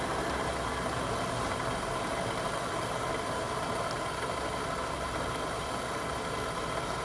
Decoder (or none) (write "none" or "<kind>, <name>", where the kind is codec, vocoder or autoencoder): none